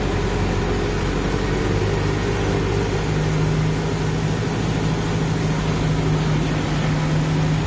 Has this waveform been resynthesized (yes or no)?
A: no